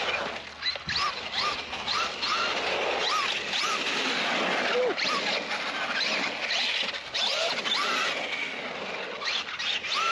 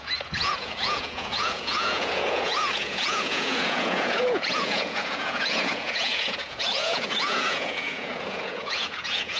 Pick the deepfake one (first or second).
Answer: second